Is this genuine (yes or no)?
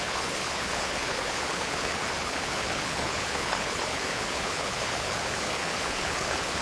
no